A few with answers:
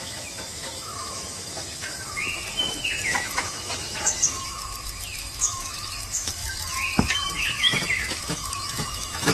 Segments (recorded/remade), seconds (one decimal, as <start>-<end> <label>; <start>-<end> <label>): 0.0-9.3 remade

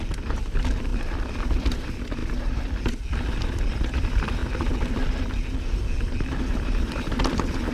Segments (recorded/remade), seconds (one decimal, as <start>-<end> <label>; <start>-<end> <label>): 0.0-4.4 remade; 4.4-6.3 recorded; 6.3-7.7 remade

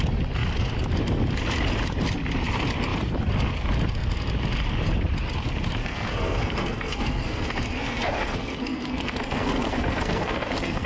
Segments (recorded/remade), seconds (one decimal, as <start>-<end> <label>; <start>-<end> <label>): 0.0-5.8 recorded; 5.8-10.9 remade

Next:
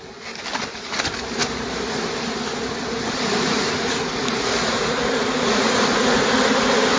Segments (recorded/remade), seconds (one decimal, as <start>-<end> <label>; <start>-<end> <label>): 0.0-2.9 recorded; 2.9-6.4 remade; 6.4-7.0 recorded

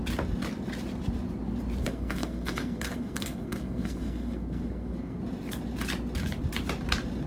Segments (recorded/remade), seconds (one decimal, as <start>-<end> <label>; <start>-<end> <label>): 0.0-1.8 recorded; 1.8-5.2 remade; 5.2-7.3 recorded